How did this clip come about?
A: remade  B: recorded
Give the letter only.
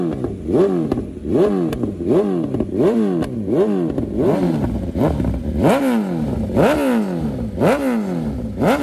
B